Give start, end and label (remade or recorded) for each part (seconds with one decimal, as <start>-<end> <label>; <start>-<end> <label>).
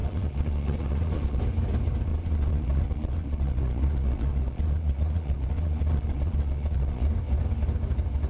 0.0-1.4 remade; 1.4-2.1 recorded; 2.1-7.1 remade; 7.1-8.3 recorded